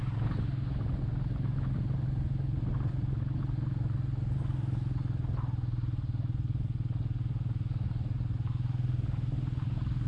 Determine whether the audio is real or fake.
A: real